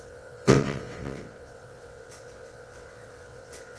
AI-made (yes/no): yes